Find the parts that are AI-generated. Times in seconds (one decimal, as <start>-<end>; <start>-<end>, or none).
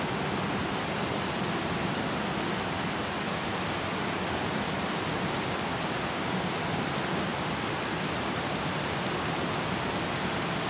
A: 0.6-1.4; 7.3-9.0